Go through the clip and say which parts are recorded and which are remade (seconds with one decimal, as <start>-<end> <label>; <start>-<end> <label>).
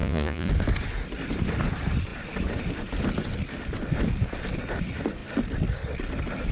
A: 0.0-0.5 remade; 0.5-6.5 recorded